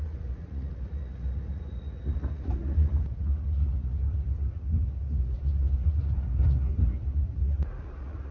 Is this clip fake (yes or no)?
yes